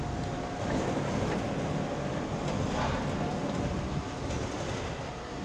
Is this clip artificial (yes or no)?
no